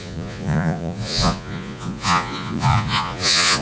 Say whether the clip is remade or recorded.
remade